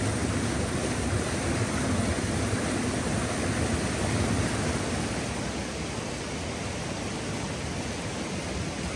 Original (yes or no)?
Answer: yes